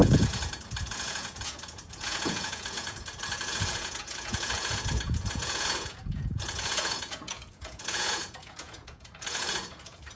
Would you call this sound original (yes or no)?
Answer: no